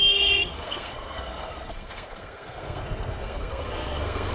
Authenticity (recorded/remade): remade